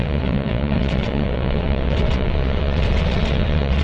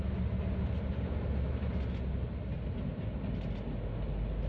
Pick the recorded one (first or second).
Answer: second